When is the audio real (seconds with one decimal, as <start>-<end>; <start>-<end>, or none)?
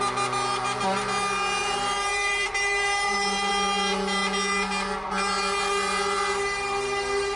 0.0-1.6; 3.5-7.4